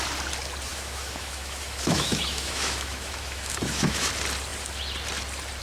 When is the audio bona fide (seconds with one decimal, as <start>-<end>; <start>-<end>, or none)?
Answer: 0.0-0.7; 4.1-5.6